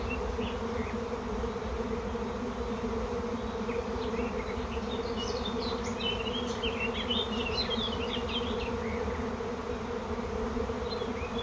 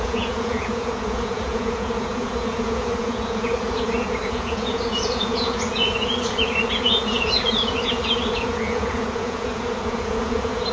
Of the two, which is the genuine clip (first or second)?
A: first